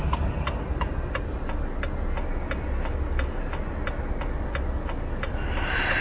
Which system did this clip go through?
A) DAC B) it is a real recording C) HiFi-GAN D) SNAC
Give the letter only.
B